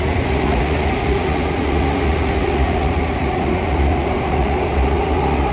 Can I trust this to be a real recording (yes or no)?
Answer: no